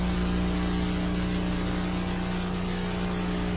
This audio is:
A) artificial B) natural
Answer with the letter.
B